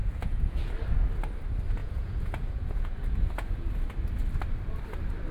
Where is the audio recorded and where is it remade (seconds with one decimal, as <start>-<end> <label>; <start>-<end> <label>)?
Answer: 0.0-0.7 remade; 0.7-1.8 recorded; 1.8-3.7 remade; 3.7-5.3 recorded